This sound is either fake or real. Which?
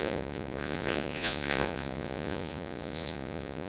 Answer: fake